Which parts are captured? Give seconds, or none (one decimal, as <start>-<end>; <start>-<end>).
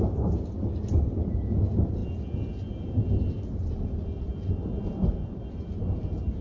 0.0-6.4